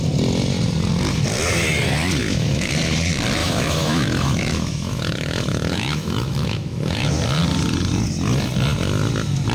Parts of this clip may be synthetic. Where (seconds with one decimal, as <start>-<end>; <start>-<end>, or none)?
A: 2.2-2.7; 3.4-7.1